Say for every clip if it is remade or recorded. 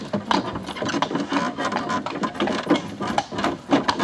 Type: recorded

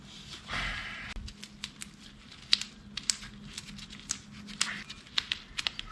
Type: recorded